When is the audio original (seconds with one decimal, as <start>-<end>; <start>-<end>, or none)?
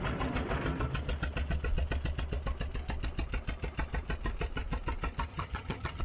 0.0-5.3